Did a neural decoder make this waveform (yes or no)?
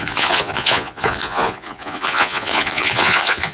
yes